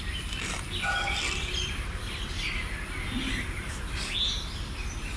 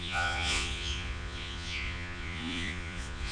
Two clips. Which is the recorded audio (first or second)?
first